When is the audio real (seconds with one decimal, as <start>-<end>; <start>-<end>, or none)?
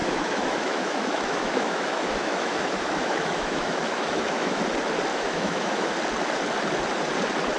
4.6-5.1; 5.9-7.6